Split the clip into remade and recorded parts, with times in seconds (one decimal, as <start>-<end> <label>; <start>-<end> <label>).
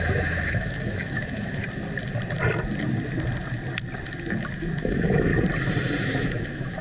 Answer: 0.0-1.6 remade; 1.6-4.8 recorded; 4.8-5.3 remade; 5.3-6.0 recorded; 6.0-6.8 remade